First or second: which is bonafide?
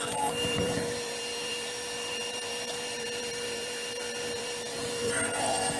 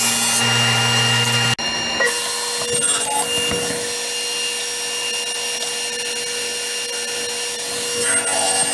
second